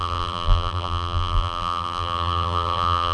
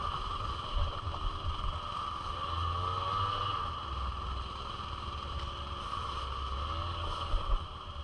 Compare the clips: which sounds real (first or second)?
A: second